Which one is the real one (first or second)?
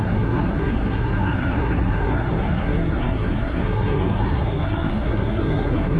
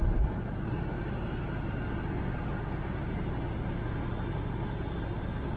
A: second